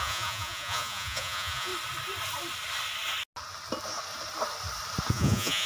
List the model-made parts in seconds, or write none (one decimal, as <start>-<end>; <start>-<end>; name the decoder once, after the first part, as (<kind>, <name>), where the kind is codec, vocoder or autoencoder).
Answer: 0.0-1.7 (vocoder, Vocos); 5.1-5.7